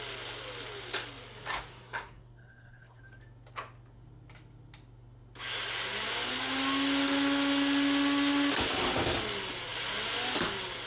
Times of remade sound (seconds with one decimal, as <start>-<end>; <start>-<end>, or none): 1.7-3.0

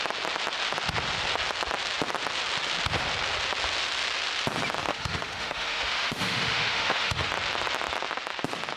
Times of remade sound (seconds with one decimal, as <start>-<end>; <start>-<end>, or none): 4.8-7.3

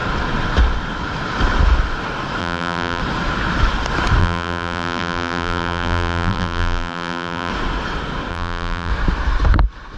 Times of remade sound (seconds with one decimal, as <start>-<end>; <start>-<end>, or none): 2.4-3.0; 4.2-7.5; 8.3-8.9

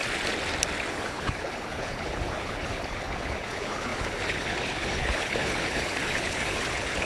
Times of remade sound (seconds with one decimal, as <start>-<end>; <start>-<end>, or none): 0.9-7.1

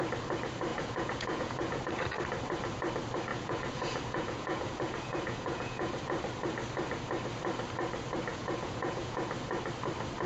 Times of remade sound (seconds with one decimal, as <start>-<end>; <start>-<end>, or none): 0.7-1.8; 3.3-6.0; 8.3-9.2

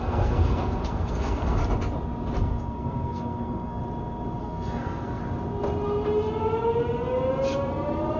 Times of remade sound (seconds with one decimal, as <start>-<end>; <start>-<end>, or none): 0.0-1.6; 2.4-3.8; 4.4-5.2